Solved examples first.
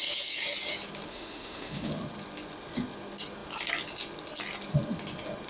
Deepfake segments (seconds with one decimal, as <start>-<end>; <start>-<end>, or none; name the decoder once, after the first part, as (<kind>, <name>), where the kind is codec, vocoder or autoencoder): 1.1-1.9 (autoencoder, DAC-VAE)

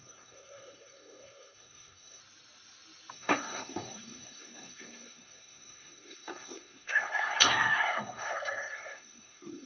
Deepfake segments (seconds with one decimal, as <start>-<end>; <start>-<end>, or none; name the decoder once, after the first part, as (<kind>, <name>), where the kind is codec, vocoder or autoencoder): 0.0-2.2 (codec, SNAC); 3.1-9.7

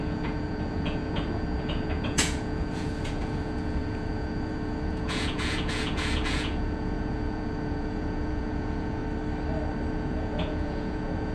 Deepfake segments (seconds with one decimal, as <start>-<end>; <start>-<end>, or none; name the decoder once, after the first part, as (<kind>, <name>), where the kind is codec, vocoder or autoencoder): 0.0-9.0 (vocoder, Vocos); 9.9-11.3